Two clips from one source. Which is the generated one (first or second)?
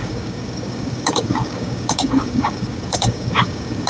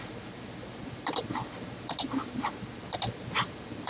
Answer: first